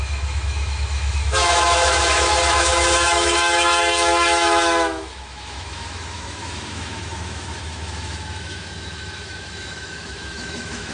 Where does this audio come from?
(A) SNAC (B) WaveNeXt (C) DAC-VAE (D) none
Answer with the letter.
C